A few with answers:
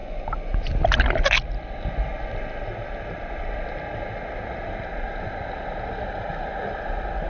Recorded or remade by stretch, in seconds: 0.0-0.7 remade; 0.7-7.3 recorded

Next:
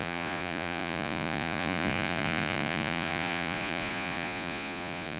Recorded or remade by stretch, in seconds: 0.0-5.2 remade

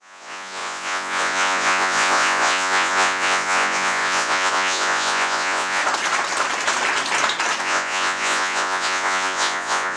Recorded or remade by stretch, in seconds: 0.0-5.8 remade; 5.8-7.6 recorded; 7.6-10.0 remade

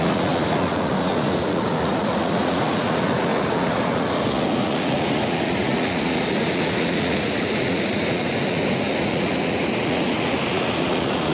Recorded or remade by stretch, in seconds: 0.0-11.3 remade

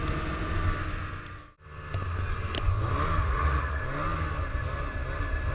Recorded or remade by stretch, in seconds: 0.0-3.2 recorded; 3.2-3.8 remade; 3.8-5.5 recorded